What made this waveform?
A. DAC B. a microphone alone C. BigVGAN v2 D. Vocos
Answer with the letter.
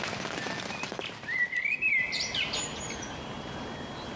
B